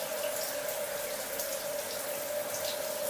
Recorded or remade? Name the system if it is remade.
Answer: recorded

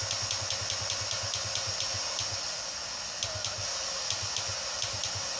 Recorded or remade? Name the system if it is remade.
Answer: recorded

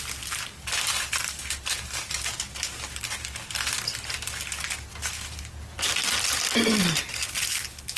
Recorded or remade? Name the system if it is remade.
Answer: recorded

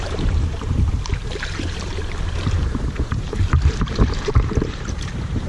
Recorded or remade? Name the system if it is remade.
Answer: remade, vocoder, BigVGAN v2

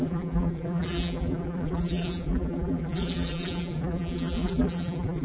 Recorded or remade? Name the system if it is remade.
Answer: remade, vocoder, BigVGAN v2